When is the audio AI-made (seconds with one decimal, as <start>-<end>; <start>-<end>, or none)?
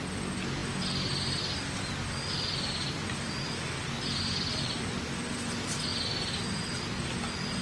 none